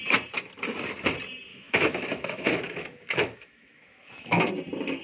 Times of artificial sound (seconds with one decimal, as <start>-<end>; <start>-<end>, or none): 1.5-4.5